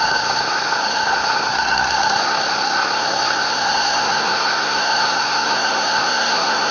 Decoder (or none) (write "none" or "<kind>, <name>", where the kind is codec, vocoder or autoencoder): codec, SNAC